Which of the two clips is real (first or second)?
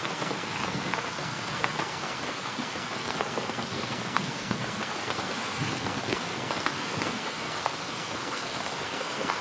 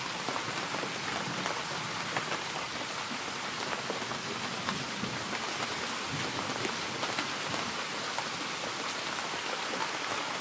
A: second